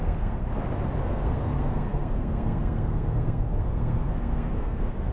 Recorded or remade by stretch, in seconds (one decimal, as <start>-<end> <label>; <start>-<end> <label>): 0.0-0.4 remade; 0.4-1.0 recorded; 1.0-5.1 remade